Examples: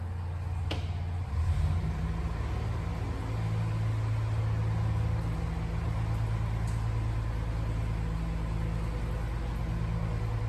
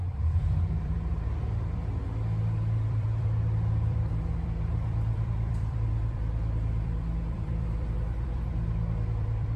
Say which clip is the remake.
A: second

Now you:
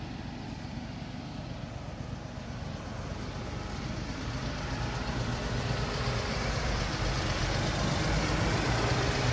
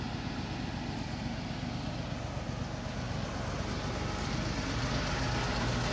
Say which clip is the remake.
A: first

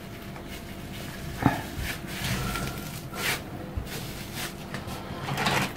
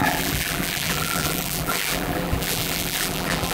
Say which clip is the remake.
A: second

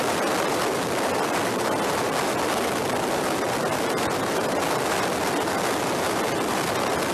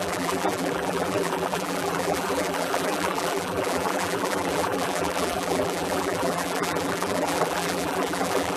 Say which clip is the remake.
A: second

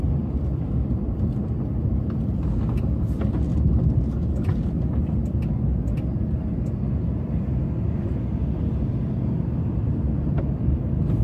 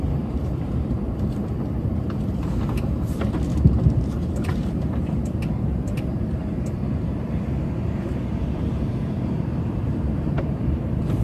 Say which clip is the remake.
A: second